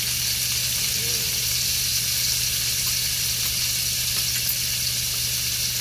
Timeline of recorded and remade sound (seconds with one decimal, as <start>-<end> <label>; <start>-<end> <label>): 0.0-5.8 recorded